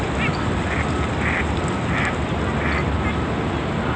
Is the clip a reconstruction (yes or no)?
no